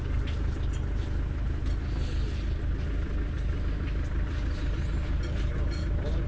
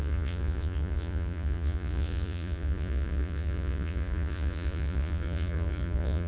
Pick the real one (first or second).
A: first